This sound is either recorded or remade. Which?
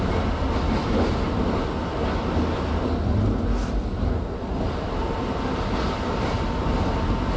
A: recorded